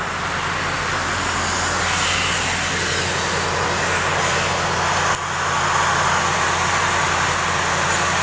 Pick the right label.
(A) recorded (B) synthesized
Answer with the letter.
A